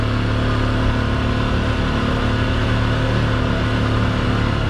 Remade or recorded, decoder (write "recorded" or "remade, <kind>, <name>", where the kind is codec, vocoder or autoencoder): recorded